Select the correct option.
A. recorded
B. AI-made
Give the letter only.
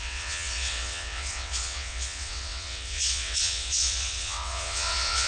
B